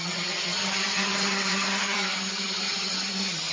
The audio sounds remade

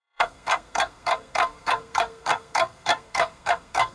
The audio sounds remade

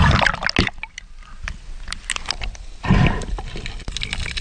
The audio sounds recorded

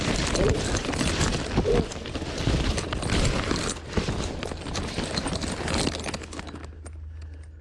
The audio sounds recorded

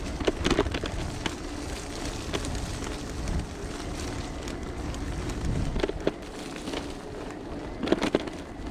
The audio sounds recorded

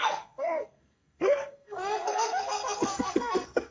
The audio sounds remade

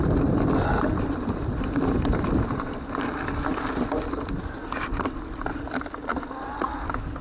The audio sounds recorded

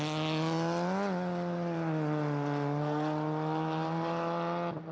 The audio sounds recorded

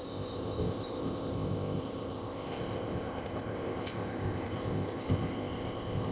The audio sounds remade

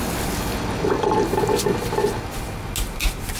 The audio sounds recorded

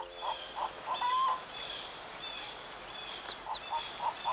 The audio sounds remade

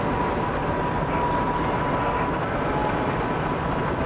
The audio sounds recorded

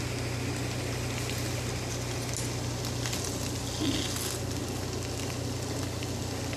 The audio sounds recorded